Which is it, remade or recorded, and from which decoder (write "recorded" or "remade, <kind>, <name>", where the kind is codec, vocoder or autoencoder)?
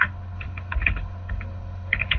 remade, codec, HILCodec